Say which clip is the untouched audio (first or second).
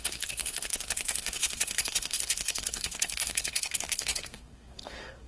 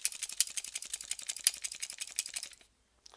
second